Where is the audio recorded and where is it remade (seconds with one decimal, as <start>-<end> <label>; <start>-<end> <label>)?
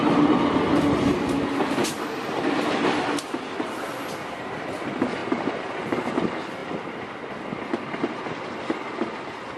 0.0-5.2 recorded; 5.2-6.1 remade; 6.1-9.6 recorded